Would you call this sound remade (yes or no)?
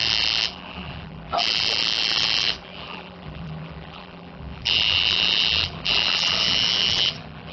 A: yes